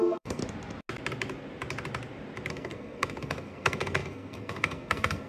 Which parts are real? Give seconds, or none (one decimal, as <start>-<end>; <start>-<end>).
0.4-2.5